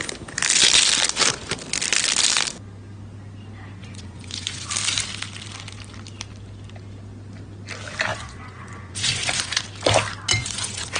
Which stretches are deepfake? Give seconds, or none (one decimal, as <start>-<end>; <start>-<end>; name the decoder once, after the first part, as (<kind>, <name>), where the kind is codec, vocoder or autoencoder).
3.8-4.7 (vocoder, Vocos); 8.1-9.6; 10.4-11.0